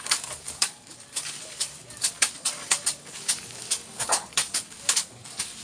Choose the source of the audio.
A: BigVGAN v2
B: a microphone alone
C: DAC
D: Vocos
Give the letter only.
C